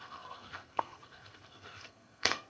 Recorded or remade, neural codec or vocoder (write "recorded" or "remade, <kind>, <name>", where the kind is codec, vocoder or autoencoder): remade, codec, SNAC